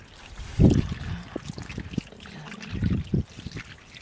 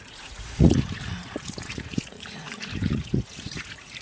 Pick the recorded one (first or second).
first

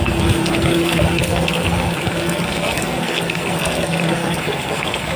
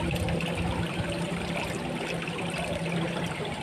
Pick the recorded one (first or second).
second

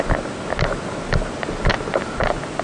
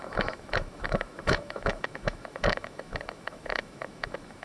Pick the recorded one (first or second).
first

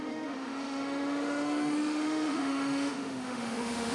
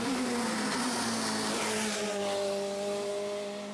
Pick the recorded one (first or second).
second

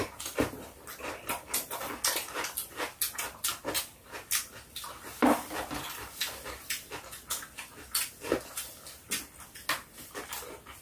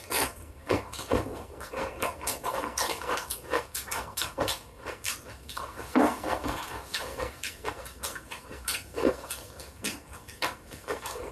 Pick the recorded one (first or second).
first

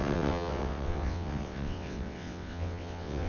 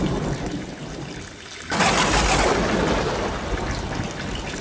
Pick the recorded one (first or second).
second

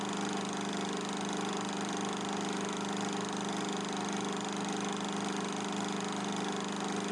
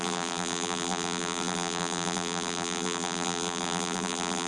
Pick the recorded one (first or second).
first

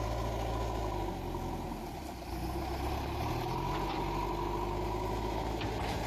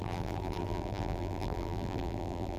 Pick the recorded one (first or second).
first